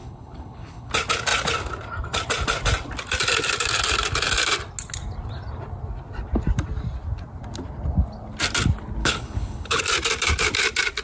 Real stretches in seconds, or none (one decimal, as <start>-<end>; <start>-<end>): 0.9-9.0; 9.8-11.0